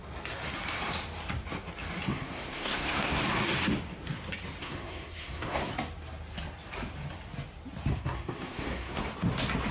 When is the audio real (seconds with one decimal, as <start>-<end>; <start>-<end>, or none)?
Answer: 0.0-2.1; 3.2-4.6; 5.7-7.9; 9.0-9.7